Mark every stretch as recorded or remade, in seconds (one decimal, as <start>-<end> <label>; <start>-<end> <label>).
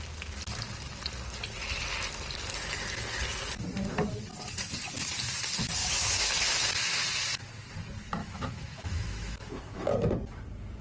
0.0-5.8 recorded; 5.8-7.0 remade; 7.0-8.2 recorded; 8.2-9.9 remade; 9.9-10.8 recorded